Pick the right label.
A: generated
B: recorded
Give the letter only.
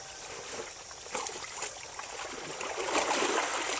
B